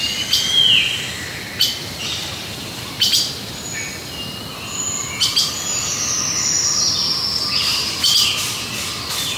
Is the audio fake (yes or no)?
no